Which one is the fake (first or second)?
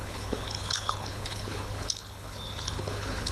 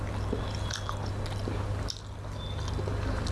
first